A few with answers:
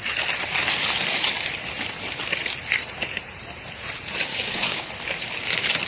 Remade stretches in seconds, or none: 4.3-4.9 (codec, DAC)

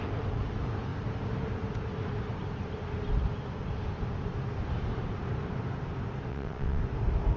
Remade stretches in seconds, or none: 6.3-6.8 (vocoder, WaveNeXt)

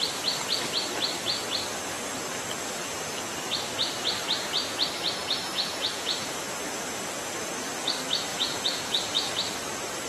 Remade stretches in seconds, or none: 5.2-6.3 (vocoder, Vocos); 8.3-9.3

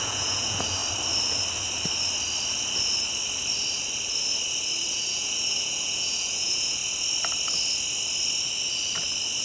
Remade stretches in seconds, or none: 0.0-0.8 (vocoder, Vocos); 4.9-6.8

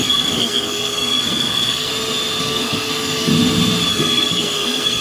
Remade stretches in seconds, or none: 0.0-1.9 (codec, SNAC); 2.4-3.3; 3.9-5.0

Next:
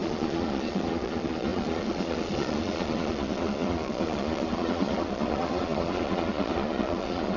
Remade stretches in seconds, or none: 0.0-7.4 (vocoder, Vocos)